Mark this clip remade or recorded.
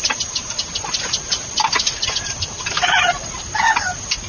recorded